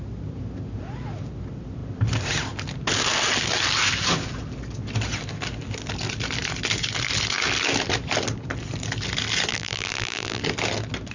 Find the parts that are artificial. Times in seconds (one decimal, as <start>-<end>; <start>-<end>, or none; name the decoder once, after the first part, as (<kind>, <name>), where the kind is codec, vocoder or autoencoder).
9.5-10.4 (vocoder, BigVGAN v2)